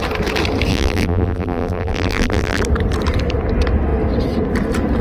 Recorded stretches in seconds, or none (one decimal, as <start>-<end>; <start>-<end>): 0.0-0.7; 2.6-5.0